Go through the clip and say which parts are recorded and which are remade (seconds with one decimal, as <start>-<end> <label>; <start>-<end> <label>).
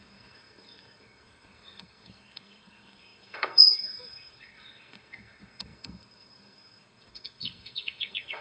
0.0-8.4 remade